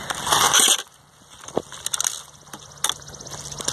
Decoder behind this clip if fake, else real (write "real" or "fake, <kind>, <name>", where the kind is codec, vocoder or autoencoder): real